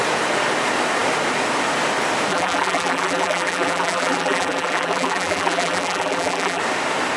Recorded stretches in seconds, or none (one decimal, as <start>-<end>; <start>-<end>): 0.0-2.3; 6.6-7.2